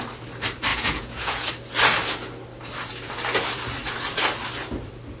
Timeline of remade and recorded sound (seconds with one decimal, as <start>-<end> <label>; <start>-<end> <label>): 0.0-0.7 recorded; 0.7-1.5 remade; 1.5-5.2 recorded